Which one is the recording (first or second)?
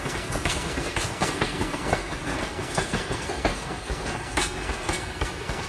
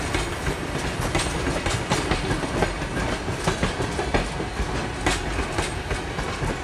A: second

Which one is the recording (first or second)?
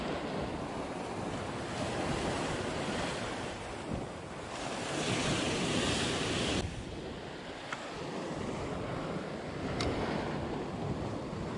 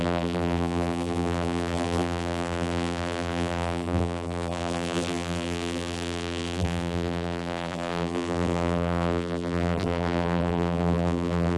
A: first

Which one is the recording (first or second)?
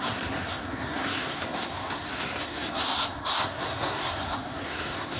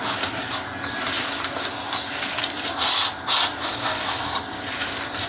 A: second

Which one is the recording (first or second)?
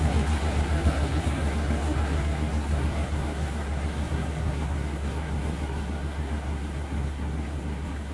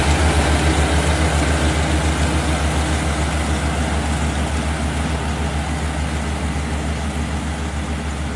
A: second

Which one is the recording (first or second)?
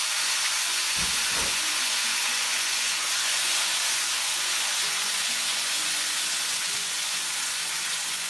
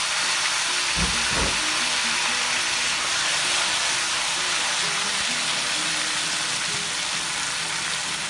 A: second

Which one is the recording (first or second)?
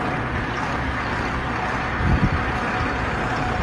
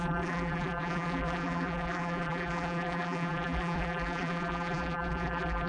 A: first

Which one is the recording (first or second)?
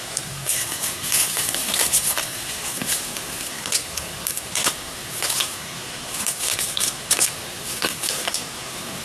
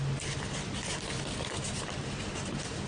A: second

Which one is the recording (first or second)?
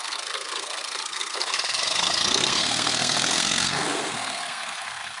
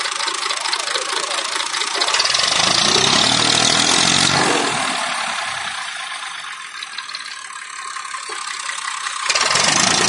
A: second